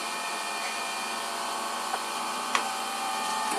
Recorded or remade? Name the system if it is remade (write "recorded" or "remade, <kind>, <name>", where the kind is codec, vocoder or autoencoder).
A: remade, vocoder, Vocos